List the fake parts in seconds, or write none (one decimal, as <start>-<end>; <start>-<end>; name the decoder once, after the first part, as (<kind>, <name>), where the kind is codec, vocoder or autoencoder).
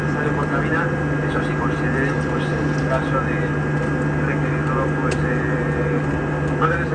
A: none